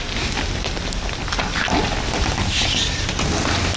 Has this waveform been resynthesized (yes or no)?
no